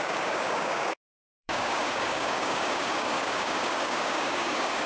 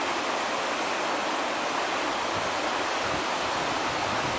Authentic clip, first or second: second